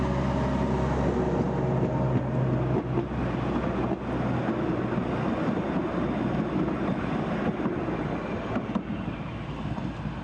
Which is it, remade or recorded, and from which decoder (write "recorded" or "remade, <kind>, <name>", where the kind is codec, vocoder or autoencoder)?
recorded